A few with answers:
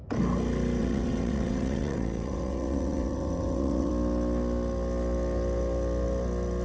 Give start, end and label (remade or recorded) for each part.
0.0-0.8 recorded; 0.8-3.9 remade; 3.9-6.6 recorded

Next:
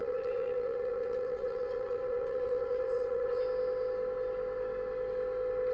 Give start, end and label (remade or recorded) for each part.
0.0-3.4 remade; 3.4-5.7 recorded

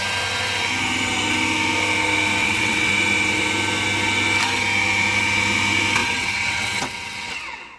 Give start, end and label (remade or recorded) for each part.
0.0-2.4 recorded; 2.4-2.9 remade; 2.9-6.0 recorded; 6.0-7.8 remade